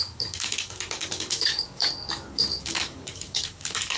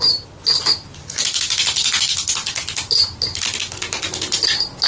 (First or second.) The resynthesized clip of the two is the first